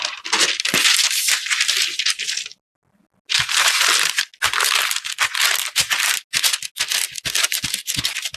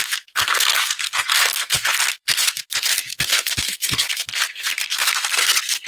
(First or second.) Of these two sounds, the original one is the first